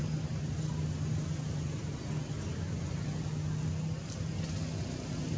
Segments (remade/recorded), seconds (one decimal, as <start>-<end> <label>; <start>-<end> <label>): 0.0-5.4 recorded